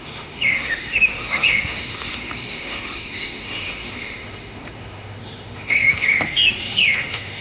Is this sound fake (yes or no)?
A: yes